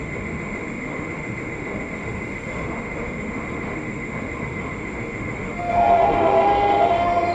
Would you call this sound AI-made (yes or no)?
yes